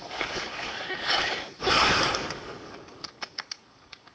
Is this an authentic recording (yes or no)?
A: no